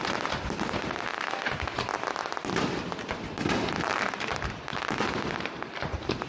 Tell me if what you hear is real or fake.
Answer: real